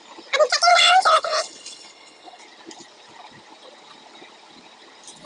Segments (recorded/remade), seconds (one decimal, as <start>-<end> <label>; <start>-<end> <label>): 0.0-0.7 recorded; 0.7-2.4 remade; 2.4-5.3 recorded